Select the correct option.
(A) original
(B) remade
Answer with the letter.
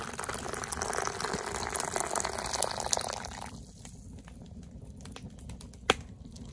A